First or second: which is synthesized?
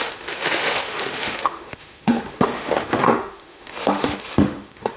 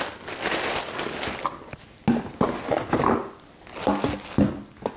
first